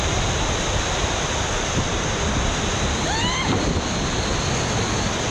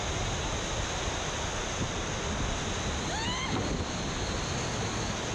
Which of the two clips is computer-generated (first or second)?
first